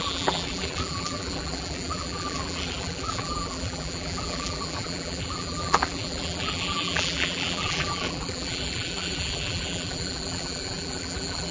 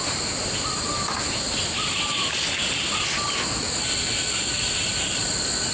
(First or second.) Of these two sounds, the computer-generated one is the first